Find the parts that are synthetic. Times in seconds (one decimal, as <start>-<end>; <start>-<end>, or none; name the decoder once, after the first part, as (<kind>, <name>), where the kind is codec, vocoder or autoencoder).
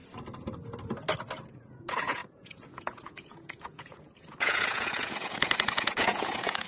1.5-6.7 (vocoder, Vocos)